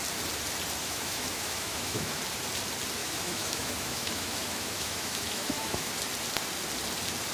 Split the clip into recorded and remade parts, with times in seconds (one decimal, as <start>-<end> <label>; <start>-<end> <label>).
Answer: 0.0-0.8 recorded; 0.8-2.2 remade; 2.2-3.0 recorded; 3.0-5.9 remade; 5.9-7.3 recorded